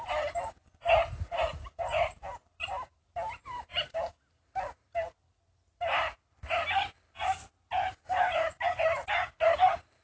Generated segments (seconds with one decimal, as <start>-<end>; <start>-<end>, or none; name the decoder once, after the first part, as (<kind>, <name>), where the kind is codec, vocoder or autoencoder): 2.5-4.3 (vocoder, BigVGAN v2)